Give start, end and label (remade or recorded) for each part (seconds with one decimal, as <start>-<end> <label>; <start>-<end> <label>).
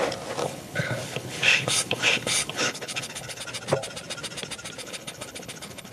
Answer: 0.0-0.4 recorded; 0.4-3.4 remade; 3.4-4.8 recorded; 4.8-5.9 remade